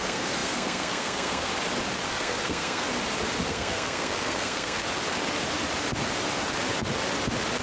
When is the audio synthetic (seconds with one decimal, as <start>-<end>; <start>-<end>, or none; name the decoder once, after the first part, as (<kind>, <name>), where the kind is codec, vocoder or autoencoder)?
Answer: 0.0-1.5 (codec, SNAC); 2.1-2.9; 3.5-4.8